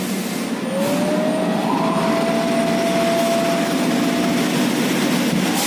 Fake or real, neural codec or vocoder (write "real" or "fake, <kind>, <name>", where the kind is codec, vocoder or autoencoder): real